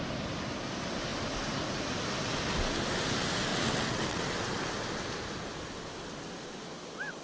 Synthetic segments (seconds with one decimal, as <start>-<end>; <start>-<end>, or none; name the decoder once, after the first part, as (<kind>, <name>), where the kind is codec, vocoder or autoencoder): 3.5-4.2 (vocoder, WaveNeXt)